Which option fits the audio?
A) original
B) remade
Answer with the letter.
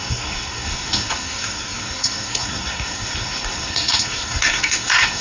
B